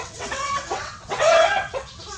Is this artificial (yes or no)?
yes